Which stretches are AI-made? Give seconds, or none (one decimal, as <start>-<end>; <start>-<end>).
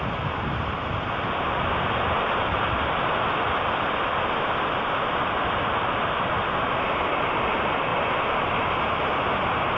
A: none